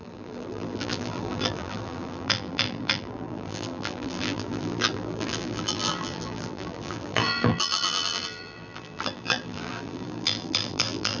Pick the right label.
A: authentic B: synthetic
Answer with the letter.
B